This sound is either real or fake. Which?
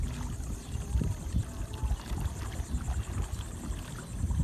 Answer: real